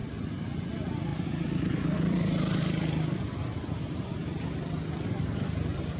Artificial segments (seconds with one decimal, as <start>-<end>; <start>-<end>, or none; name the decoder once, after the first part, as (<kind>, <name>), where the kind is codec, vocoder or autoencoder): 0.0-0.6 (vocoder, BigVGAN v2); 1.1-4.5